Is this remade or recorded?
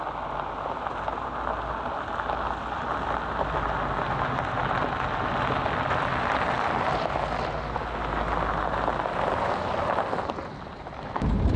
recorded